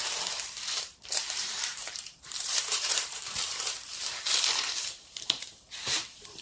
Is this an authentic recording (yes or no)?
no